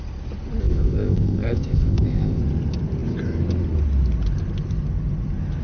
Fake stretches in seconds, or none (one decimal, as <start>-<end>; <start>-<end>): 0.6-2.4